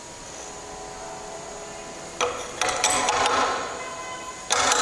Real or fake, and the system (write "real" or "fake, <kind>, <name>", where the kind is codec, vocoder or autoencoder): real